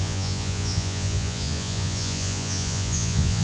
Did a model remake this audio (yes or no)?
yes